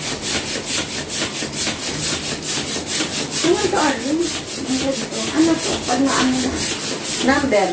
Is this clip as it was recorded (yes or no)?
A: yes